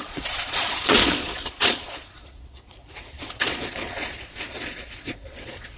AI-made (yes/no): yes